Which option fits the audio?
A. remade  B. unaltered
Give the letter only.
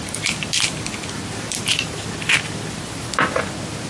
B